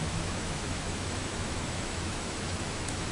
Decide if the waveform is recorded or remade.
remade